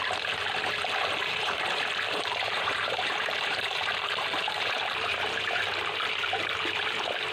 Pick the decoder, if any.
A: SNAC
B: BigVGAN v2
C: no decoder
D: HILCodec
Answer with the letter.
B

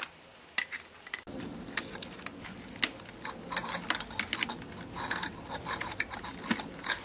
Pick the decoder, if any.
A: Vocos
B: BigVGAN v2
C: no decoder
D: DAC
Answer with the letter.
C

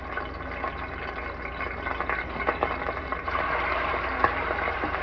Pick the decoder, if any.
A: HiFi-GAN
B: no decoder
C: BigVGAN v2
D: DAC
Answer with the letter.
B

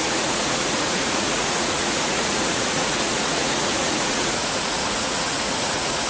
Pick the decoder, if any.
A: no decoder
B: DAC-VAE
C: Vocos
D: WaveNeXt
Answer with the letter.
C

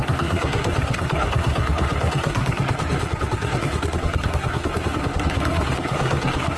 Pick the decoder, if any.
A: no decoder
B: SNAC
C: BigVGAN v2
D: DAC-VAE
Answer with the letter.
B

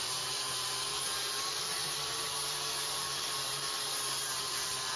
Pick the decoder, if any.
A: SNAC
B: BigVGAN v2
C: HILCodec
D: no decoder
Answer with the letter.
B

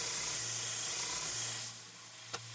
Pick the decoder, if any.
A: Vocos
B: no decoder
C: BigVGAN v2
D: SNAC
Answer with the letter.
B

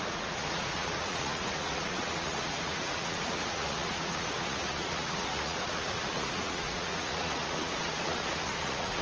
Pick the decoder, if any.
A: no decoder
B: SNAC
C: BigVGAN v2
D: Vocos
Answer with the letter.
D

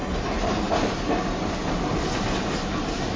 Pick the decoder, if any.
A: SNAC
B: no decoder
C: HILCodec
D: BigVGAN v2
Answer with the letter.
B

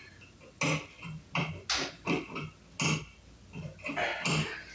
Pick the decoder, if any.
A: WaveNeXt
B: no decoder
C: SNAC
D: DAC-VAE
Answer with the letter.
B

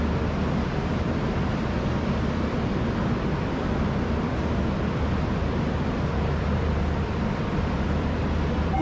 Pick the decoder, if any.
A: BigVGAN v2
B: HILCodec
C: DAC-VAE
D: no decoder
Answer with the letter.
A